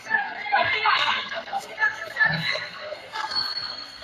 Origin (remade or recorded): remade